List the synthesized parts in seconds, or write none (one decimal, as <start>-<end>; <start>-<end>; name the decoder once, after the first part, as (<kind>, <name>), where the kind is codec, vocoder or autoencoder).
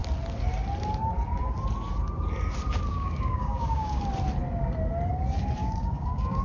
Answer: 2.9-4.0 (codec, DAC); 5.6-6.4